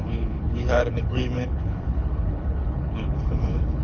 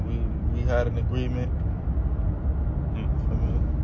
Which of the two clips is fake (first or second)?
first